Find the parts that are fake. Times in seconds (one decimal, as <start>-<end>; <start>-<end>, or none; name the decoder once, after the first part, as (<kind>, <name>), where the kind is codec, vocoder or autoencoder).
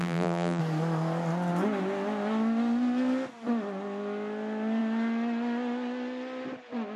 0.0-0.6 (vocoder, BigVGAN v2)